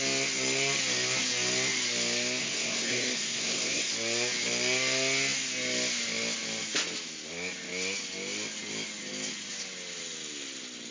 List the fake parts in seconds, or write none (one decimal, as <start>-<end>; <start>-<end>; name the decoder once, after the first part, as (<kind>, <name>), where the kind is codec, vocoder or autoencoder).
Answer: 2.4-3.9 (codec, SNAC)